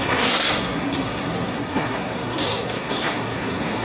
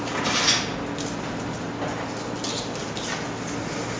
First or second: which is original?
second